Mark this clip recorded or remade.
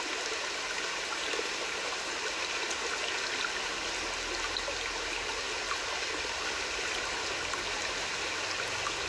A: recorded